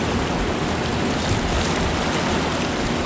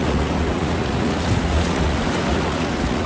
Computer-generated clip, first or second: second